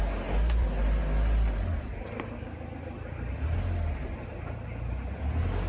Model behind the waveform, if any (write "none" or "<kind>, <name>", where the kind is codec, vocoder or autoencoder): none